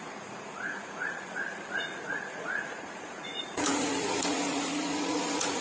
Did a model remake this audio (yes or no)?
yes